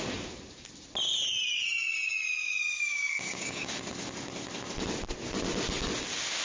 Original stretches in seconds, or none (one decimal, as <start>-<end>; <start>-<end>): 0.0-2.4; 3.7-6.4